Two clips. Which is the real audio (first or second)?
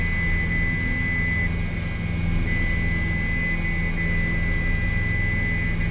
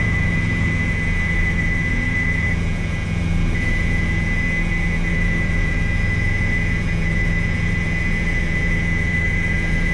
first